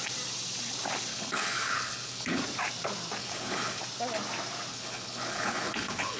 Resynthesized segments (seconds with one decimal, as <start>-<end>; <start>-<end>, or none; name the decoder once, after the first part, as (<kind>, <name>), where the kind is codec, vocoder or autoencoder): 1.1-2.4 (codec, HILCodec); 3.2-3.8; 4.7-6.2

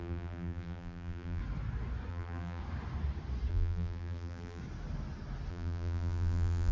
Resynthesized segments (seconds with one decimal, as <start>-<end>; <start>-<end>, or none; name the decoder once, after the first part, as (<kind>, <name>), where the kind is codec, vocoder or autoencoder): 0.0-1.4 (vocoder, BigVGAN v2); 2.1-2.6; 3.5-4.6; 5.5-6.7

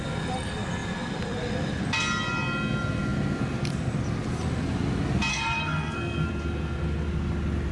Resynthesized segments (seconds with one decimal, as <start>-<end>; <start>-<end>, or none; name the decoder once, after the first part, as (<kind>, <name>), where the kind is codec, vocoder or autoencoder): 5.3-6.3 (codec, SNAC)

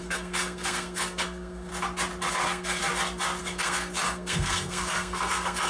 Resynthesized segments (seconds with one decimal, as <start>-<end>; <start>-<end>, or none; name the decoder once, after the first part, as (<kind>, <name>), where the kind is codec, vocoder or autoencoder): 0.0-1.7 (codec, SNAC); 2.3-2.8; 3.4-5.7

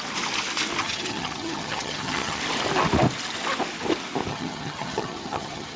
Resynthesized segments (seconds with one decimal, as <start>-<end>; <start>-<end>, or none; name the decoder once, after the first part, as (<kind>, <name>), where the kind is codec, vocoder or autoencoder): 0.8-2.4 (vocoder, HiFi-GAN); 4.3-5.8

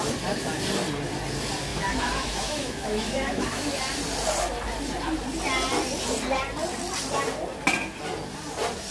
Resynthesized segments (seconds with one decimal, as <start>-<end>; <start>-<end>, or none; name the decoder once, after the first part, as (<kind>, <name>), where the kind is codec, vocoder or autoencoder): 1.7-3.8 (autoencoder, DAC-VAE)

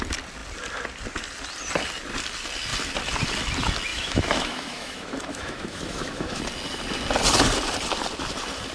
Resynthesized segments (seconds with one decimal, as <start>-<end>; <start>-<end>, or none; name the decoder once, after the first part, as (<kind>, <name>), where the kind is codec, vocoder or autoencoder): 3.9-6.4 (autoencoder, DAC-VAE)